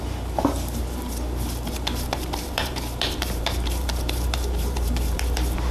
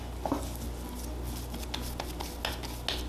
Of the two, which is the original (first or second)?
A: second